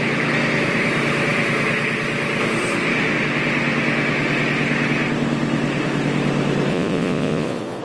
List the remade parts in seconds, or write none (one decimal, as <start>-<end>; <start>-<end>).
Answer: 6.7-7.8